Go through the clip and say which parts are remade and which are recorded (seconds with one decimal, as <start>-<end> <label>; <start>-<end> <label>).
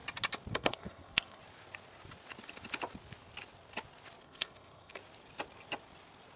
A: 0.0-0.5 recorded; 0.5-1.4 remade; 1.4-4.2 recorded; 4.2-5.0 remade; 5.0-6.4 recorded